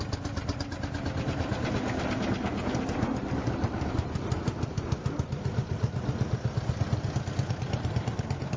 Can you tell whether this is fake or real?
real